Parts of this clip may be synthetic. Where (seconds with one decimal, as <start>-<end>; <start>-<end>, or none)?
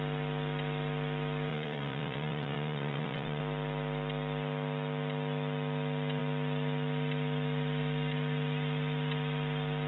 1.5-3.4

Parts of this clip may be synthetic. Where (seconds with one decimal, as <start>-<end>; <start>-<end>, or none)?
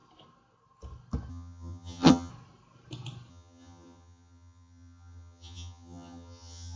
1.3-2.3; 3.3-6.8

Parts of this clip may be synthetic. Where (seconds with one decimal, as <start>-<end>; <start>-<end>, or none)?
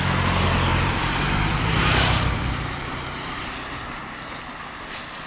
0.7-3.5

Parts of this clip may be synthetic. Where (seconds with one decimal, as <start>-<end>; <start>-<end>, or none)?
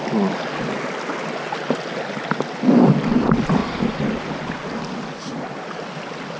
none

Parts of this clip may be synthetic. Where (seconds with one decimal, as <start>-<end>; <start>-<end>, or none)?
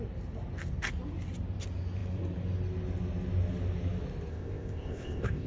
4.3-5.5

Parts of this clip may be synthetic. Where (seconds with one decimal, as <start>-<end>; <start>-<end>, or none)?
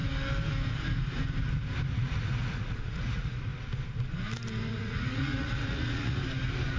1.9-3.5; 4.7-6.2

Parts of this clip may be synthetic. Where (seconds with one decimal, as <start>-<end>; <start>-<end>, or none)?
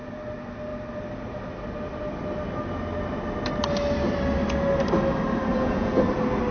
5.5-6.0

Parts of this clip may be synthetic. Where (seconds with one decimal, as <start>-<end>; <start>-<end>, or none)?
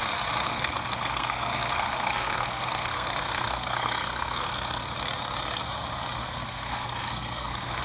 0.4-4.8; 6.2-7.8